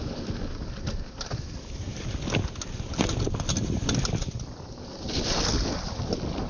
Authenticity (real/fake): real